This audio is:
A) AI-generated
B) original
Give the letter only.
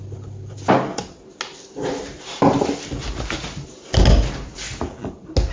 B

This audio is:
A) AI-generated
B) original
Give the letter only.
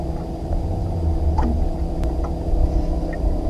B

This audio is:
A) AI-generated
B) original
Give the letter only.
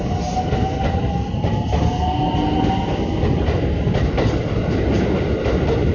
B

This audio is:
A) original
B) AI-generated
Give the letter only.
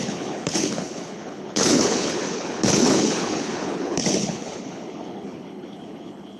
B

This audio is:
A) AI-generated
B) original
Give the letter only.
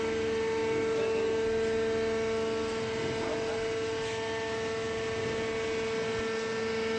B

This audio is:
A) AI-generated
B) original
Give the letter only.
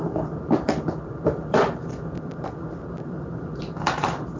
A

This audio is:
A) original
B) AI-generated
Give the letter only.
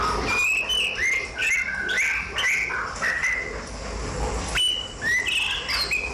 A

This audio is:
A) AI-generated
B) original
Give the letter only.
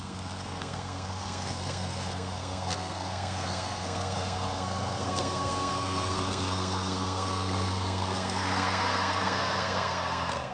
A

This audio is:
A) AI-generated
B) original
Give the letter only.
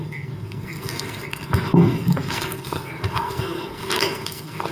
A